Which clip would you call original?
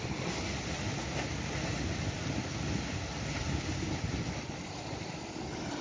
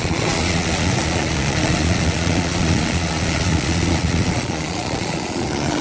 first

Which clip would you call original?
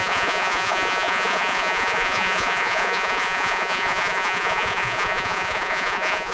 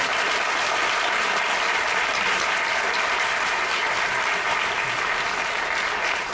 second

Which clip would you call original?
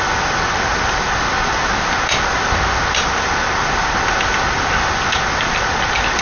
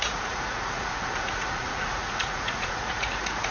first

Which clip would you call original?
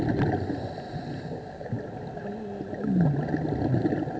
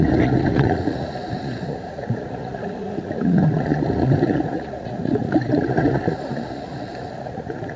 first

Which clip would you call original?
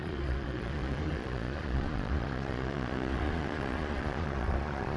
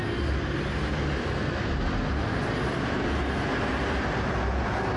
second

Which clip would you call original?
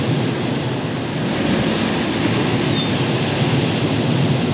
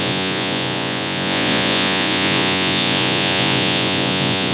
first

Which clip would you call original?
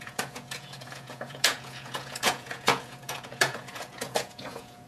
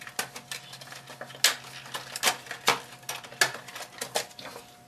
second